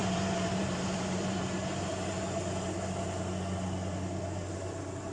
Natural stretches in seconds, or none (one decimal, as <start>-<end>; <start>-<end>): 1.4-5.1